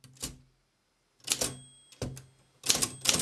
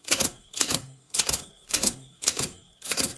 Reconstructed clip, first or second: second